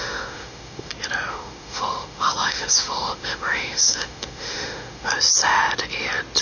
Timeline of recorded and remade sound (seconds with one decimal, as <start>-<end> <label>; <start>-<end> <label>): 0.0-0.9 remade; 0.9-1.3 recorded; 1.3-5.1 remade; 5.1-6.4 recorded